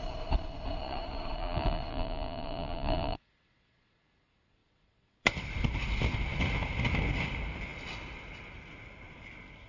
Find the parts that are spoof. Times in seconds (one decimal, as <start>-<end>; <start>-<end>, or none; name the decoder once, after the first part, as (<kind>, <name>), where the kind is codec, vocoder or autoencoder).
0.8-4.0 (vocoder, Vocos); 4.6-5.4